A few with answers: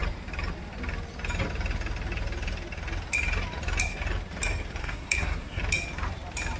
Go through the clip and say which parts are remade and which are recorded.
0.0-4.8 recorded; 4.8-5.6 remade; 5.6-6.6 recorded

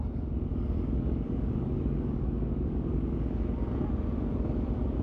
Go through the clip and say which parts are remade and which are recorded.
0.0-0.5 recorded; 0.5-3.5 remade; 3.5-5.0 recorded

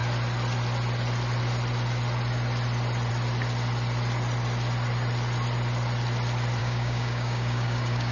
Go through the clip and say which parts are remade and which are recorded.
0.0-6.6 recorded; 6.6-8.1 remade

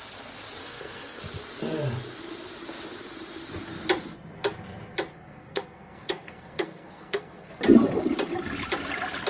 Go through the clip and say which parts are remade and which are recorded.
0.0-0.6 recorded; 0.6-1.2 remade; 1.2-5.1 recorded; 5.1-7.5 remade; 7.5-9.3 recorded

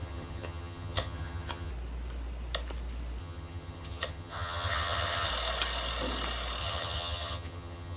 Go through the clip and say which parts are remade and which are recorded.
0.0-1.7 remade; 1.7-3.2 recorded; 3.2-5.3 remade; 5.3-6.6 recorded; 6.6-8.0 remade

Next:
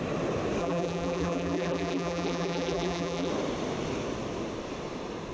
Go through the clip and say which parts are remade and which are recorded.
0.0-0.6 recorded; 0.6-3.3 remade; 3.3-5.3 recorded

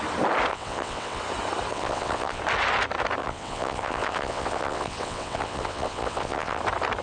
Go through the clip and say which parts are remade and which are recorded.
0.0-0.5 recorded; 0.5-1.2 remade; 1.2-1.7 recorded; 1.7-2.4 remade; 2.4-3.2 recorded; 3.2-6.6 remade; 6.6-7.0 recorded